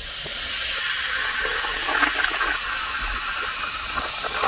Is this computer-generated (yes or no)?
no